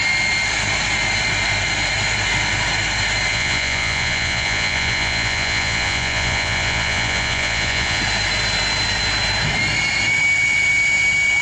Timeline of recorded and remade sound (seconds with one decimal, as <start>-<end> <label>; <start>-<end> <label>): 0.0-3.3 recorded; 3.3-8.0 remade; 8.0-11.4 recorded